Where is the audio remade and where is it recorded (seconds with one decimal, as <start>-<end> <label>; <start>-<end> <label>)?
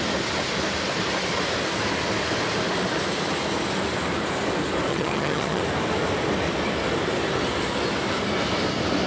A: 0.0-4.9 recorded; 4.9-5.6 remade; 5.6-9.1 recorded